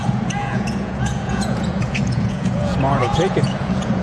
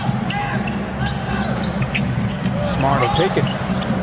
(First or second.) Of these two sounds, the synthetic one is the first